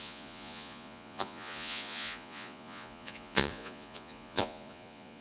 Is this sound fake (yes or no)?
yes